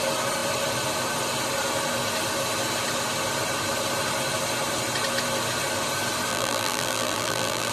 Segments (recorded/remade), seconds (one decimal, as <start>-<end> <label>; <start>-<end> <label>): 0.0-6.3 recorded; 6.3-7.7 remade